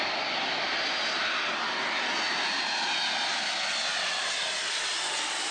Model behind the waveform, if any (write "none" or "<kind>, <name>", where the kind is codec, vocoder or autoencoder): none